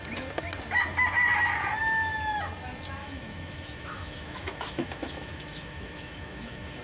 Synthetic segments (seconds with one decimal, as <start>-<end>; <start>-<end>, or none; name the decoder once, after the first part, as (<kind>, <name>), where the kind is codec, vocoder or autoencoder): 3.0-6.8 (autoencoder, DAC-VAE)